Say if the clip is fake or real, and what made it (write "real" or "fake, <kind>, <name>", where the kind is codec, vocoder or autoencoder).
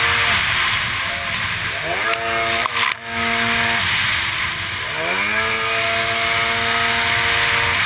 real